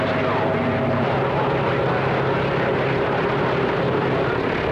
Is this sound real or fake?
real